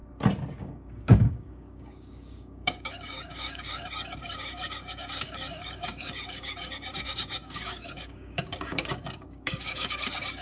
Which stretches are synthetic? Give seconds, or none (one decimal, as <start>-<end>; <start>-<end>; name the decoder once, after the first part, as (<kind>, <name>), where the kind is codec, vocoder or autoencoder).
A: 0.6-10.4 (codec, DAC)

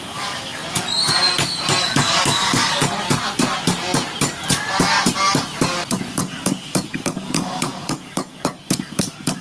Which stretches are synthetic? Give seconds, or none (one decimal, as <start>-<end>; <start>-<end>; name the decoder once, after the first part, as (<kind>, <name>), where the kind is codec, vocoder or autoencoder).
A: 0.0-0.6 (codec, DAC); 1.8-2.8; 6.1-9.4

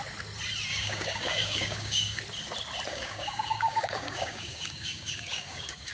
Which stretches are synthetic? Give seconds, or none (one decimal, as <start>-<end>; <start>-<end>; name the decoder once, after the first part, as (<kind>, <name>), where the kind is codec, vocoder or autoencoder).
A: 0.7-2.2 (codec, DAC); 2.9-5.9

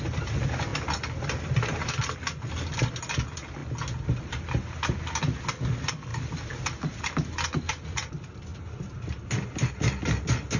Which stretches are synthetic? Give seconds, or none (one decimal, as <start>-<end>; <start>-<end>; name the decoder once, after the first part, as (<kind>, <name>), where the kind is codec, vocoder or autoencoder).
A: none

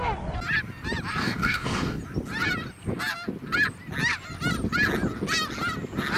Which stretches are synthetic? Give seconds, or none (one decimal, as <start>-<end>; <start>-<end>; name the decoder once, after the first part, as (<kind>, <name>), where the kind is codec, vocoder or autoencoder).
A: 1.2-2.0 (codec, DAC)

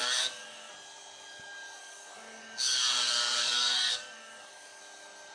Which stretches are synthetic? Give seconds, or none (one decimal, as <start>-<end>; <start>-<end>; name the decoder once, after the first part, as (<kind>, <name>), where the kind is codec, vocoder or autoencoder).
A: 0.0-0.7 (codec, DAC); 1.8-4.8

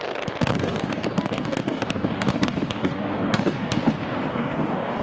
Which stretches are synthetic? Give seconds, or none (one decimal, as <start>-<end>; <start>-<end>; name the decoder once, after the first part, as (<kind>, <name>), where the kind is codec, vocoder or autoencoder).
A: 0.0-3.8 (codec, DAC); 4.3-5.0

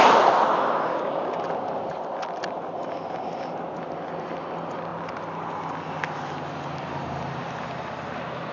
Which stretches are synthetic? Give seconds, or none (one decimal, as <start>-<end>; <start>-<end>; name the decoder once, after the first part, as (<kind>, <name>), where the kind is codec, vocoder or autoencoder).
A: 0.9-1.4 (codec, DAC)